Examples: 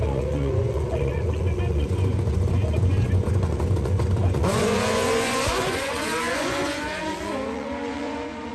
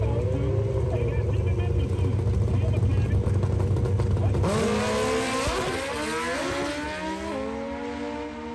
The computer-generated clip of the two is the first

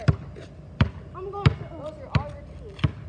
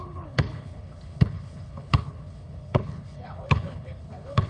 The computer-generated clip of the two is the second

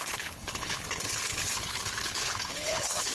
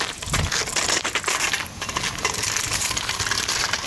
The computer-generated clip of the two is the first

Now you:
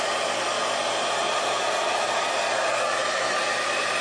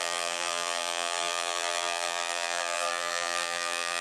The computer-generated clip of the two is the second